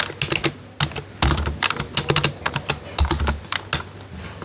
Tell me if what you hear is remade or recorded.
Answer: recorded